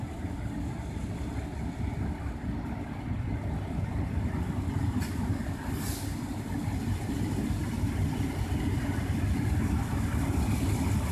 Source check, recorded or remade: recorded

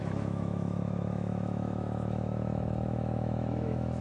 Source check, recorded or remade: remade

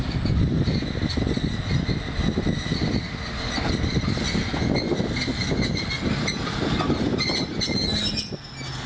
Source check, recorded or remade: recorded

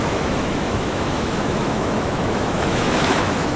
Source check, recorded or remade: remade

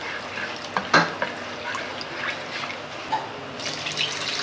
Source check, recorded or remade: recorded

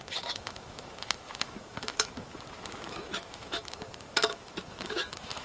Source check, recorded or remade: remade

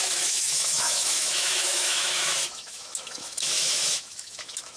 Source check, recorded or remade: remade